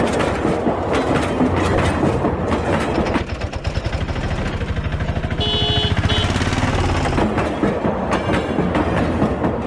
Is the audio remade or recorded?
recorded